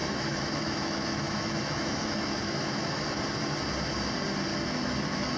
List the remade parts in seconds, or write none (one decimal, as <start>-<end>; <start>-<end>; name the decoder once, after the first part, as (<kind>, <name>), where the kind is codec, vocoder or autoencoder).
0.0-3.2 (autoencoder, DAC-VAE); 4.5-5.4